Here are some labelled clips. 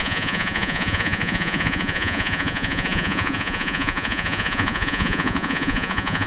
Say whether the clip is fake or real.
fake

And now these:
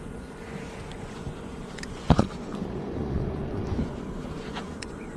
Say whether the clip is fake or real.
fake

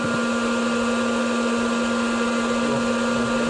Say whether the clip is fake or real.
real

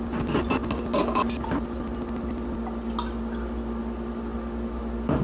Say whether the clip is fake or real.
real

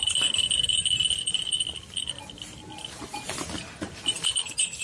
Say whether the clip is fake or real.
real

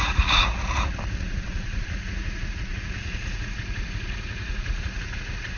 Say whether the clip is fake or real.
fake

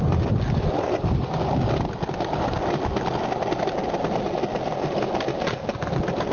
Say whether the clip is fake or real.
real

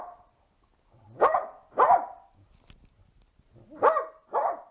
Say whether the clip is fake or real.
real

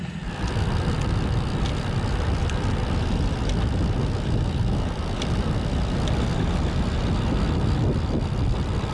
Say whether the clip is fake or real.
real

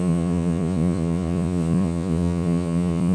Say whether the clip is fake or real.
fake